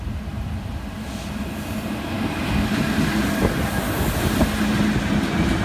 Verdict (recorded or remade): recorded